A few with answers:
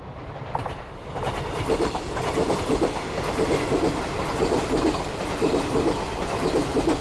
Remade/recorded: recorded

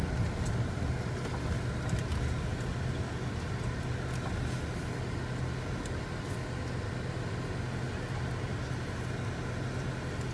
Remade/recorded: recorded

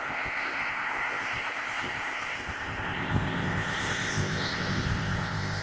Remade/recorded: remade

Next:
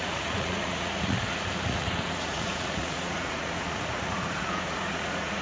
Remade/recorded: remade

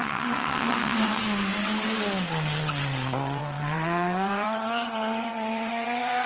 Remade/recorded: remade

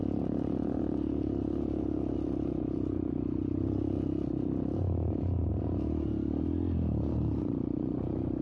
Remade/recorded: recorded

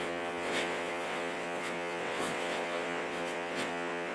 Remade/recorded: remade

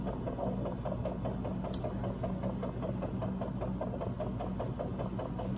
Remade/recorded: recorded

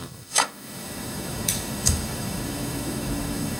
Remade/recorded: remade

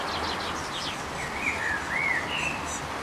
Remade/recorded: recorded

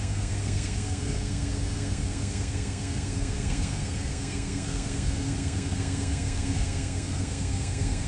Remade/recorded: remade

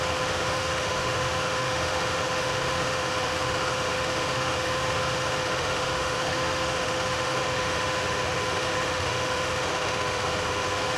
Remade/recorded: remade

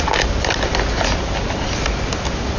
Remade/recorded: recorded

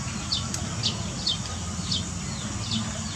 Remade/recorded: recorded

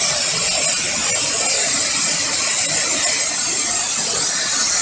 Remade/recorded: recorded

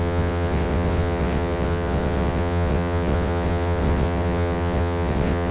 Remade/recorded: remade